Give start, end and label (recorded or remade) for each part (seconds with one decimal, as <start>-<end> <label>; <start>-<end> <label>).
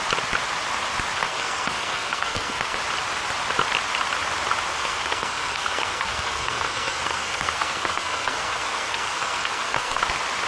0.0-1.2 recorded; 1.2-2.8 remade; 2.8-4.7 recorded; 4.7-10.0 remade; 10.0-10.5 recorded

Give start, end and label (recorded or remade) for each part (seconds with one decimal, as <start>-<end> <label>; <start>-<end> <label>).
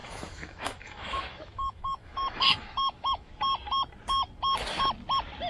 0.0-3.3 remade; 3.3-5.5 recorded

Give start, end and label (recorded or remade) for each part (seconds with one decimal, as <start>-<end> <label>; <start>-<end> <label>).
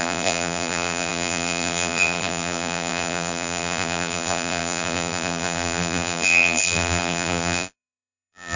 0.0-8.6 remade